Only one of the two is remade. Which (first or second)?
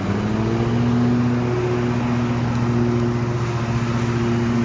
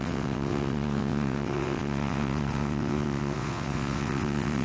second